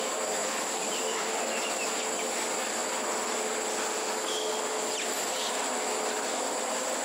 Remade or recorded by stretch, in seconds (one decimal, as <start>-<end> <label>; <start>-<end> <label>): 0.0-0.4 recorded; 0.4-1.7 remade; 1.7-7.0 recorded